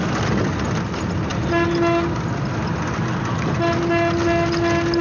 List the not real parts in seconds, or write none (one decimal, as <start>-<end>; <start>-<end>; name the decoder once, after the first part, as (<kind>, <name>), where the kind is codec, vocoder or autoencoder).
none

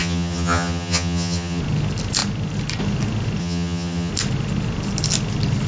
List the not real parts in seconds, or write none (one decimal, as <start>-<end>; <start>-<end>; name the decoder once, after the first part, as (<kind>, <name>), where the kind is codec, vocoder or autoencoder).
0.0-1.6 (vocoder, HiFi-GAN); 3.4-4.1